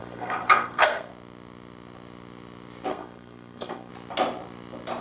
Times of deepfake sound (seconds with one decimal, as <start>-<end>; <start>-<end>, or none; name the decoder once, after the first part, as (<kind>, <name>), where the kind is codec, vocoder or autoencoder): 0.0-1.1 (codec, SNAC); 2.9-3.9